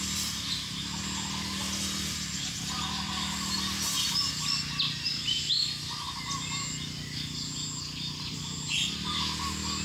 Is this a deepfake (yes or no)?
no